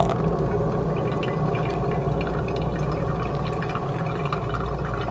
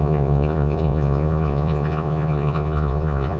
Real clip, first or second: first